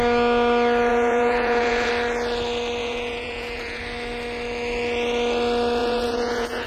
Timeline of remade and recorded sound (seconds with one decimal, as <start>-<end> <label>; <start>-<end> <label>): 0.0-0.9 recorded; 0.9-1.9 remade; 1.9-2.8 recorded; 2.8-3.8 remade; 3.8-5.8 recorded; 5.8-6.7 remade